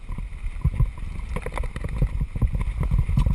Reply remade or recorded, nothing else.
recorded